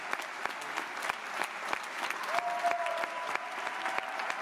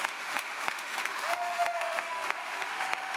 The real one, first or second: first